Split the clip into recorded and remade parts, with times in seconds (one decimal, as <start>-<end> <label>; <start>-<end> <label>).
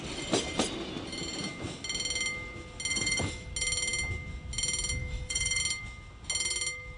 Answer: 0.0-2.9 recorded; 2.9-3.5 remade; 3.5-5.0 recorded; 5.0-5.6 remade; 5.6-7.0 recorded